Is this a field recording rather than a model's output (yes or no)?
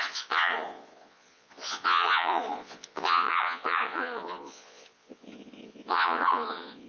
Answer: no